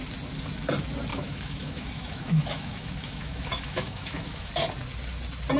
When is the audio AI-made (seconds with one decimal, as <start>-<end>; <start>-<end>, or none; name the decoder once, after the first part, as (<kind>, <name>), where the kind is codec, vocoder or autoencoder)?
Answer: 1.1-4.5 (autoencoder, DAC-VAE)